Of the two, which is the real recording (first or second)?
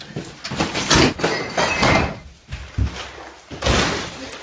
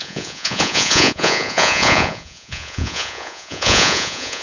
first